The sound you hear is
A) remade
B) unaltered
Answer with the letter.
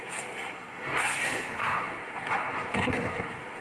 A